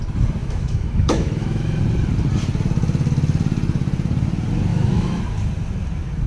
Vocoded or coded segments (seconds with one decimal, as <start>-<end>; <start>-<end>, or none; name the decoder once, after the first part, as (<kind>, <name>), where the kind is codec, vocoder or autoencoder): 0.4-1.8 (autoencoder, DAC-VAE); 4.7-5.2